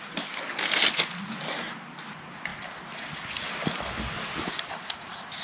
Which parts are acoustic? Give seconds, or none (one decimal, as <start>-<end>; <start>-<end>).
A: 0.0-5.4